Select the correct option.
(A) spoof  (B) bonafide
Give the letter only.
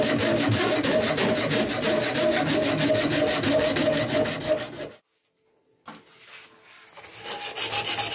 B